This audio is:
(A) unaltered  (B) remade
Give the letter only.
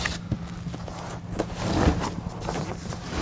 A